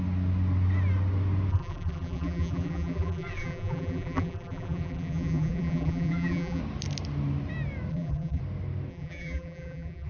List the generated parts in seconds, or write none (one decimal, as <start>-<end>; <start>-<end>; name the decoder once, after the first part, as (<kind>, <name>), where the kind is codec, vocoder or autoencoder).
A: 1.5-6.6 (vocoder, BigVGAN v2); 7.9-8.4; 8.9-10.1